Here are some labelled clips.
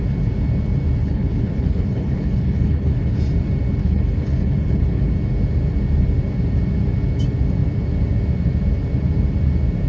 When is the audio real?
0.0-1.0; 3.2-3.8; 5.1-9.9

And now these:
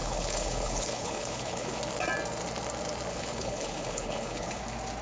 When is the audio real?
1.8-3.1; 4.6-5.0